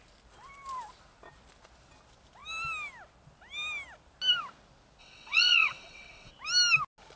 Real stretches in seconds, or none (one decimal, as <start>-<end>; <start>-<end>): 0.0-5.0; 6.3-7.2